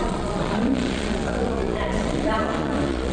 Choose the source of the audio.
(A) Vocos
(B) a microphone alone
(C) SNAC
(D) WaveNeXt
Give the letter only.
A